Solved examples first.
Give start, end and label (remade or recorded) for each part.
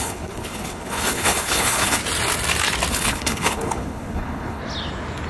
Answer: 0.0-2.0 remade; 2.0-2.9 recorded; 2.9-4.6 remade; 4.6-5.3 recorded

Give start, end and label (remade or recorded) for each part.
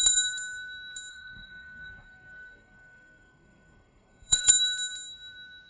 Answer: 0.0-1.1 recorded; 1.1-4.5 remade; 4.5-5.7 recorded